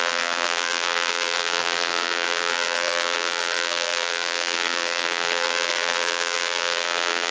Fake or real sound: fake